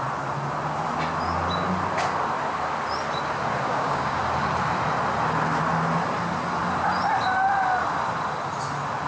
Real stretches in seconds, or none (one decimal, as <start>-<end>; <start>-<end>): 0.0-3.7; 4.2-9.1